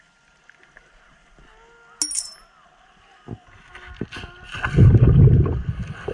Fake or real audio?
real